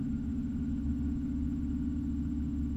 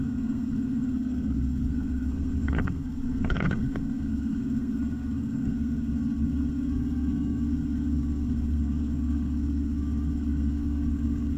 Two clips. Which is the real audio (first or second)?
first